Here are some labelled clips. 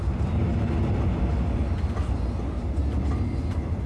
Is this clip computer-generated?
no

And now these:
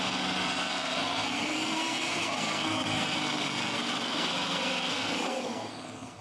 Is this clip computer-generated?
yes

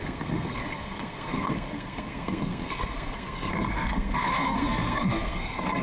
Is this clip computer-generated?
yes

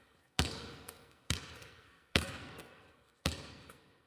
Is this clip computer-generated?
yes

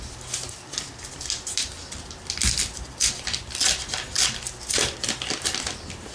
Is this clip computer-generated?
no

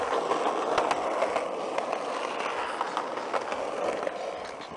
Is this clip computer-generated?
no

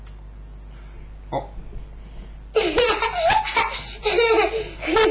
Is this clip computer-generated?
no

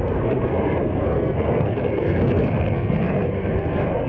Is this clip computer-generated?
yes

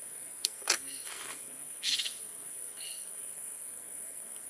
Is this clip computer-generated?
yes